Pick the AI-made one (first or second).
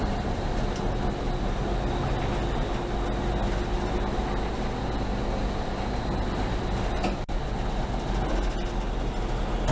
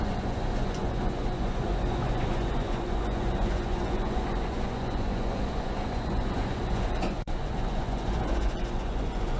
second